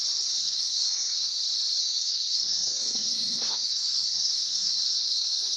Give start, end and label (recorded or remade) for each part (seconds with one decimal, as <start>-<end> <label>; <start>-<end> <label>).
0.0-0.4 recorded; 0.4-1.4 remade; 1.4-1.8 recorded; 1.8-5.6 remade